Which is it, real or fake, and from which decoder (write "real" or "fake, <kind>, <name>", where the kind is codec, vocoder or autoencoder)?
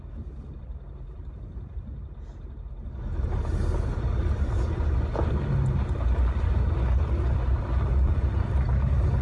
real